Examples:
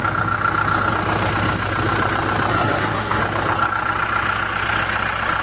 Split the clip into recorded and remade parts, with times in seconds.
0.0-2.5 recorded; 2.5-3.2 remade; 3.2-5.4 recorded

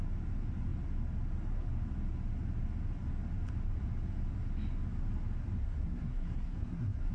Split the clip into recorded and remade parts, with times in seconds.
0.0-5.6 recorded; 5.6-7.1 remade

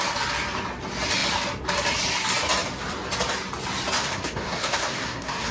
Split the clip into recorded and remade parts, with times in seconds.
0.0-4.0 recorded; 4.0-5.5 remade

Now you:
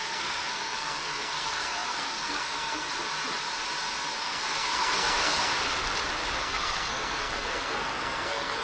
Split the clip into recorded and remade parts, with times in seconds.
0.0-2.9 remade; 2.9-4.2 recorded; 4.2-5.5 remade; 5.5-6.4 recorded; 6.4-8.6 remade